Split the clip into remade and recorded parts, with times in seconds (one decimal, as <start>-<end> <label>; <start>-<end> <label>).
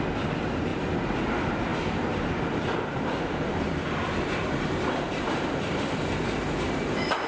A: 0.0-0.7 recorded; 0.7-1.2 remade; 1.2-1.7 recorded; 1.7-6.1 remade; 6.1-7.3 recorded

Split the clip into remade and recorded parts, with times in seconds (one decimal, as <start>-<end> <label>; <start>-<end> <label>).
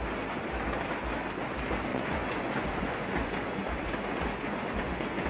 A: 0.0-1.9 recorded; 1.9-5.3 remade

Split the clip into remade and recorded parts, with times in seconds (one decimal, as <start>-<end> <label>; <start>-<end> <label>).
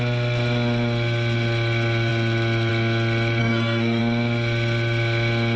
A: 0.0-3.4 recorded; 3.4-4.0 remade; 4.0-5.6 recorded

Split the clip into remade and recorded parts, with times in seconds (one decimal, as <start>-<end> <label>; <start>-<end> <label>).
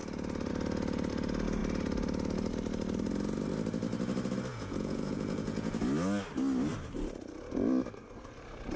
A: 0.0-4.5 recorded; 4.5-5.7 remade; 5.7-8.8 recorded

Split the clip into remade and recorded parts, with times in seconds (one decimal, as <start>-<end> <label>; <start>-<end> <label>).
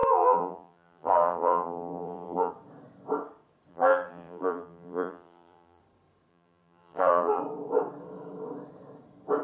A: 0.0-2.5 remade; 2.5-3.7 recorded; 3.7-5.8 remade; 5.8-6.3 recorded; 6.3-7.4 remade; 7.4-9.4 recorded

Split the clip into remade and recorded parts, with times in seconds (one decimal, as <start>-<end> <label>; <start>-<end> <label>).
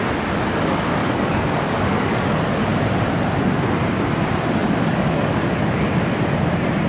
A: 0.0-1.0 recorded; 1.0-2.2 remade; 2.2-4.6 recorded; 4.6-5.9 remade; 5.9-6.9 recorded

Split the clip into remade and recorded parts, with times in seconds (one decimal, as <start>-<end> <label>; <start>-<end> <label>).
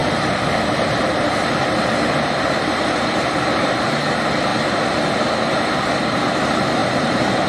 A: 0.0-4.5 remade; 4.5-6.0 recorded; 6.0-7.5 remade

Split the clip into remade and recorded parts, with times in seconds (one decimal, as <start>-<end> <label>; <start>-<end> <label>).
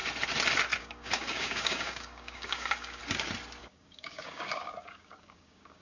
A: 0.0-0.8 recorded; 0.8-3.0 remade; 3.0-3.6 recorded; 3.6-5.8 remade